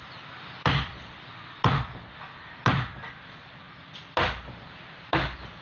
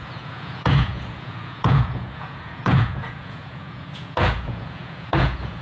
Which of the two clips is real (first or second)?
first